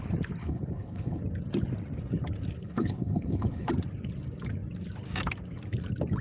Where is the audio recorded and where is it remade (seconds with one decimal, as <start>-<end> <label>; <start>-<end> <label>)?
0.0-0.4 recorded; 0.4-1.2 remade; 1.2-2.6 recorded; 2.6-3.7 remade; 3.7-6.2 recorded